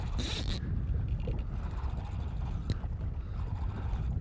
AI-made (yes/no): no